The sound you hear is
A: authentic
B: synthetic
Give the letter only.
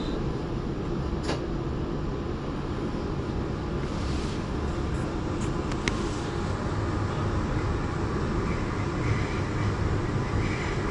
A